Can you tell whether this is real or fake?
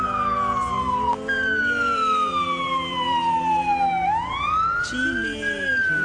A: real